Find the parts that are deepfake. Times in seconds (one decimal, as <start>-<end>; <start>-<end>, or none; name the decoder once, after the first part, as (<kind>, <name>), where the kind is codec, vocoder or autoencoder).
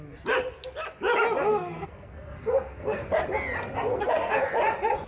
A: 1.5-3.1 (codec, SNAC); 3.9-4.4